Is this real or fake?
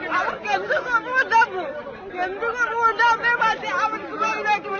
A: real